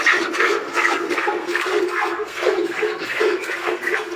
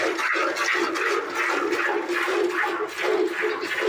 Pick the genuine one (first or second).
second